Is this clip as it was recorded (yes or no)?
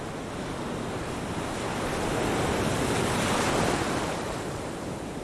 yes